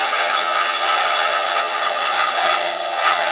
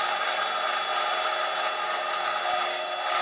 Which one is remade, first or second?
first